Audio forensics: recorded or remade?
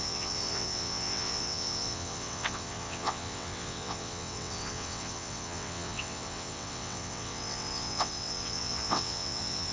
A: remade